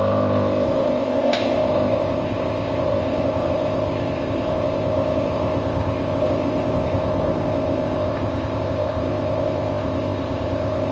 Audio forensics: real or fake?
fake